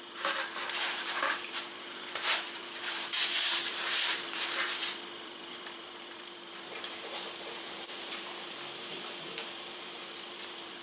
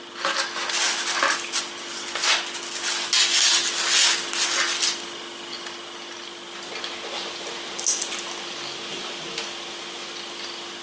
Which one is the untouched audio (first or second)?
second